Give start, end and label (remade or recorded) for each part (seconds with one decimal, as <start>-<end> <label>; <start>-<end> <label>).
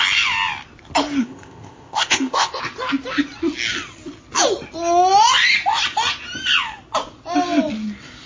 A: 0.0-1.2 recorded; 1.2-2.6 remade; 2.6-8.3 recorded